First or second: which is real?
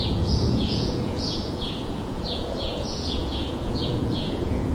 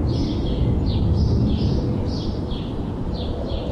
second